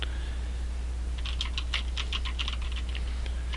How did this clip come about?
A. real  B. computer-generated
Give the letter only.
A